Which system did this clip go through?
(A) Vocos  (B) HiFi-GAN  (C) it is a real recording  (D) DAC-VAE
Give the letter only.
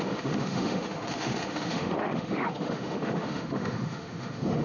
D